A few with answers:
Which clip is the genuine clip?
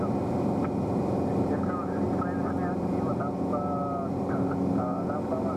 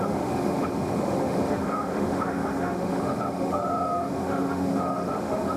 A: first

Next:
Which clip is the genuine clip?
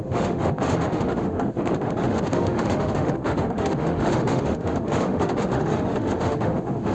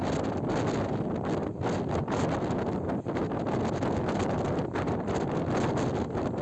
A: second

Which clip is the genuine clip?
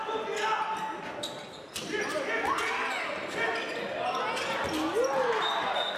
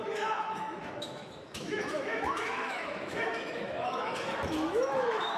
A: first